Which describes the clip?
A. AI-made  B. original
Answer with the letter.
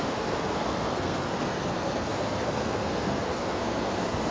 A